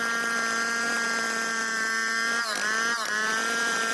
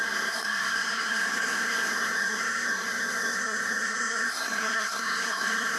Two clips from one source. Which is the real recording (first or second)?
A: first